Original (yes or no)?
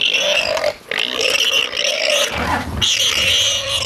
yes